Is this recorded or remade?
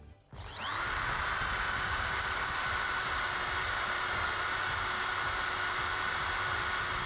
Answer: recorded